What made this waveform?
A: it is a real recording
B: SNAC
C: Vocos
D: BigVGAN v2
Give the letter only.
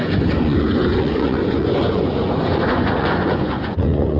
C